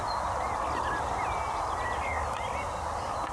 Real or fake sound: real